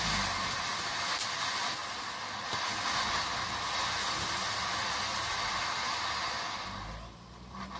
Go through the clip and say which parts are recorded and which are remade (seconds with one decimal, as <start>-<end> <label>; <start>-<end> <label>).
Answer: 0.0-7.8 recorded